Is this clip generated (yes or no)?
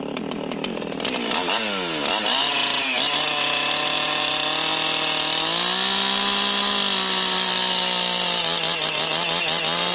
no